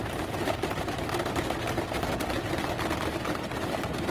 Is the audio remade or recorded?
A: recorded